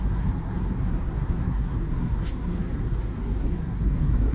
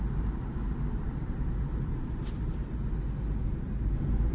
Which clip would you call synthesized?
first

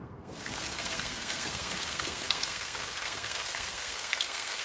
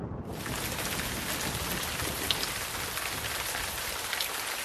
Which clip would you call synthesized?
first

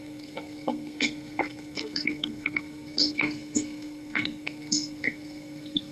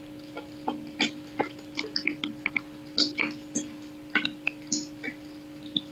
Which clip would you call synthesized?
first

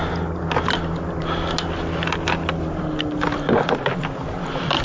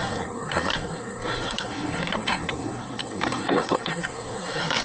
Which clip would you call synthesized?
second